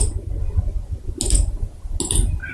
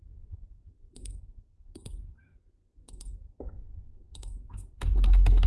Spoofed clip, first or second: second